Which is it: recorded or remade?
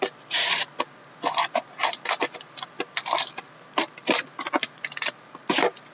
recorded